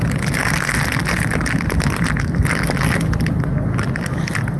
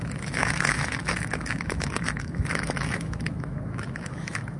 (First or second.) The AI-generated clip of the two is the second